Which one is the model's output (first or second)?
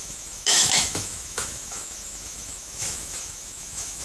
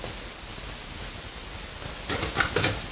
first